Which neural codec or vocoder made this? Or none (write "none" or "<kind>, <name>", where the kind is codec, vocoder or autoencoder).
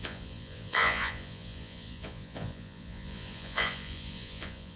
vocoder, Vocos